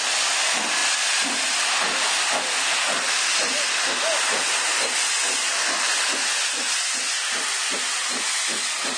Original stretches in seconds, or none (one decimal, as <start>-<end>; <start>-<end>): 0.0-9.0